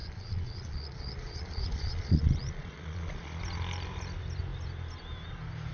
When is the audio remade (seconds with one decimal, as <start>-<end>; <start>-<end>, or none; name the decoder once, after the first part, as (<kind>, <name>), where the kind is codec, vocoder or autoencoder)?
0.0-3.4 (vocoder, Vocos)